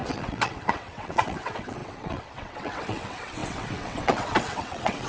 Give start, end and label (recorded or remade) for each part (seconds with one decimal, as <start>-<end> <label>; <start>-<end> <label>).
0.0-5.1 remade